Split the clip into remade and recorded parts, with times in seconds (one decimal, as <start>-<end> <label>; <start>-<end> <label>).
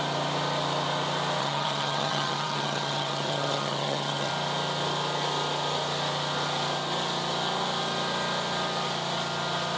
0.0-1.4 recorded; 1.4-4.3 remade; 4.3-9.8 recorded